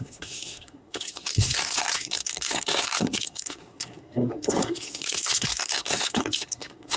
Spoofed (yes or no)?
yes